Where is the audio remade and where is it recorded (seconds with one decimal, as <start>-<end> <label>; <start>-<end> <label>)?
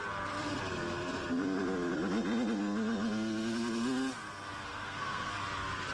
0.0-4.7 recorded; 4.7-5.3 remade; 5.3-5.9 recorded